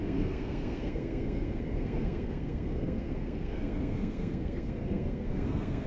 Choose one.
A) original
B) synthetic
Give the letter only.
B